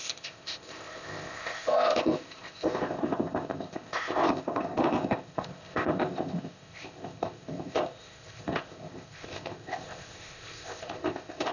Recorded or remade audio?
remade